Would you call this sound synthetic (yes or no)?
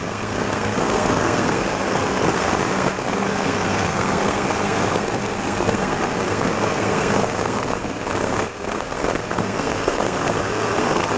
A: yes